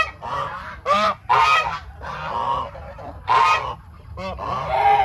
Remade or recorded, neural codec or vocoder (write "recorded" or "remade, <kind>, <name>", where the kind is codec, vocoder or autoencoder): recorded